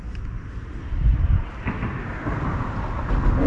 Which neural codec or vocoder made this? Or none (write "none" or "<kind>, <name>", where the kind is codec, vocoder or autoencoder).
none